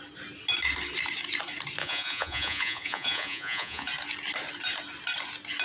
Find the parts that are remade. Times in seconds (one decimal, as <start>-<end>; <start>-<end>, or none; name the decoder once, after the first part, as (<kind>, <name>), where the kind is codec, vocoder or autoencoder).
1.8-3.9 (vocoder, Vocos)